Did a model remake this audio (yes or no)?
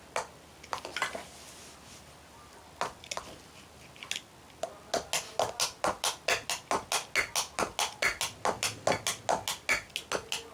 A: no